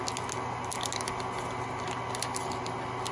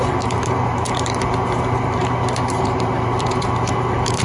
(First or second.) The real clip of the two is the first